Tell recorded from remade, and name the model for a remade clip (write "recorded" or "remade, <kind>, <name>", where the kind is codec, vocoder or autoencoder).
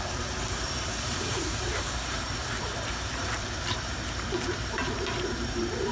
remade, vocoder, BigVGAN v2